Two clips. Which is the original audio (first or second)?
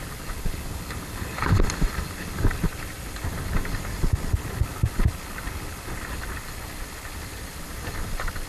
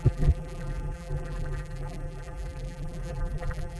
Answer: first